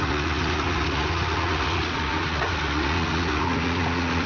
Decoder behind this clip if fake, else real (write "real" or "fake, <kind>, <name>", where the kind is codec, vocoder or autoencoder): fake, vocoder, Vocos